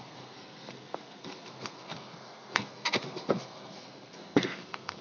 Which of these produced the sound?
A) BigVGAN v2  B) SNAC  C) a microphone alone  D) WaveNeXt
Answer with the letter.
B